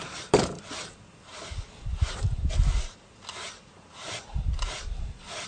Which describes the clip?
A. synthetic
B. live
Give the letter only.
B